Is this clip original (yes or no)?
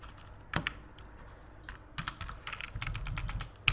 yes